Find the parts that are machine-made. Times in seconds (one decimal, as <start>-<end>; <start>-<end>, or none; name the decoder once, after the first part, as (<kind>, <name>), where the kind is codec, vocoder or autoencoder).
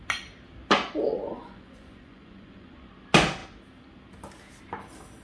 1.1-2.9 (vocoder, Vocos)